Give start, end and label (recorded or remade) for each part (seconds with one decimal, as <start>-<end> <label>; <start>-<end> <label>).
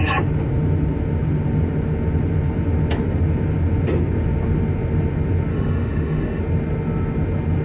0.0-5.5 recorded; 5.5-6.4 remade; 6.4-7.6 recorded